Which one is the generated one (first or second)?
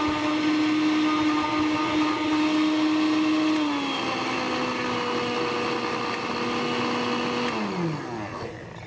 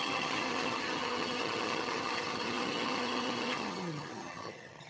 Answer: second